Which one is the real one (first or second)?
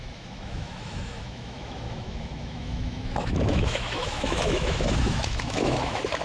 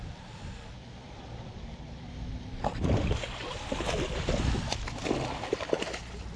second